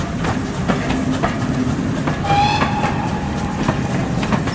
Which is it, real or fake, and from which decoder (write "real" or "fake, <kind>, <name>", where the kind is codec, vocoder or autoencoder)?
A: real